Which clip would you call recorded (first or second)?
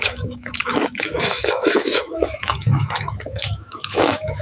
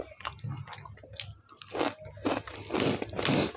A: second